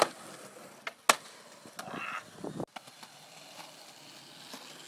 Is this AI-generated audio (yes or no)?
no